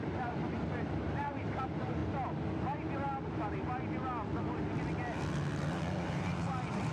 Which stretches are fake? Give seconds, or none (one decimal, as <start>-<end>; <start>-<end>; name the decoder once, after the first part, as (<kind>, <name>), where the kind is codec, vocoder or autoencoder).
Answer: 0.0-2.0 (vocoder, BigVGAN v2); 6.1-6.9